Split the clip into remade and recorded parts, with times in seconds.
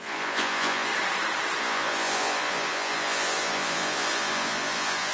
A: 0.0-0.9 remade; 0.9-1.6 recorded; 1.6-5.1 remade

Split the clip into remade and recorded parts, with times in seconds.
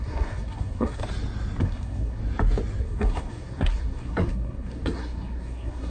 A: 0.0-1.0 remade; 1.0-1.6 recorded; 1.6-2.2 remade; 2.2-2.8 recorded; 2.8-5.9 remade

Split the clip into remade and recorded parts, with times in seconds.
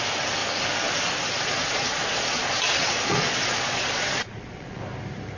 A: 0.0-1.6 recorded; 1.6-4.8 remade; 4.8-5.4 recorded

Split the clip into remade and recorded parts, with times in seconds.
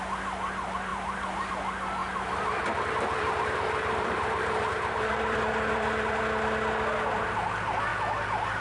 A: 0.0-0.9 recorded; 0.9-1.5 remade; 1.5-2.0 recorded; 2.0-6.2 remade; 6.2-8.6 recorded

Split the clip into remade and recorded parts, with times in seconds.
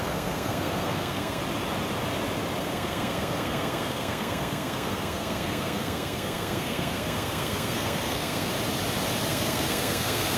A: 0.0-1.4 remade; 1.4-2.6 recorded; 2.6-8.5 remade; 8.5-9.3 recorded; 9.3-10.4 remade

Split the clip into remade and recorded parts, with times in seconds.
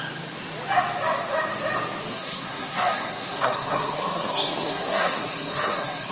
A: 0.0-2.1 recorded; 2.1-6.1 remade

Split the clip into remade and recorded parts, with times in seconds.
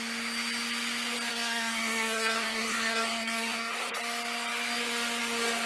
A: 0.0-1.3 recorded; 1.3-4.0 remade; 4.0-5.7 recorded